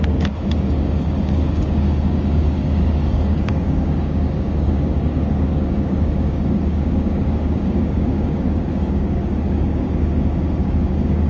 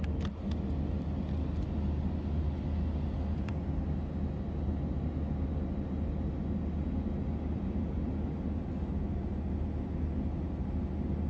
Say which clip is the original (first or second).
second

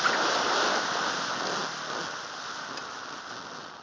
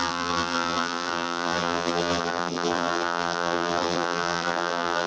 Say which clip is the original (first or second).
first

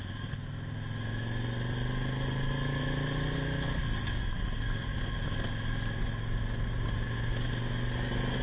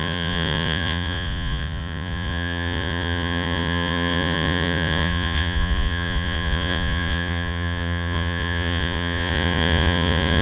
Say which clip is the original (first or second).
first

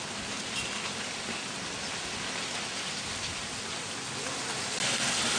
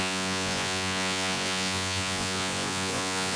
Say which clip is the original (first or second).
first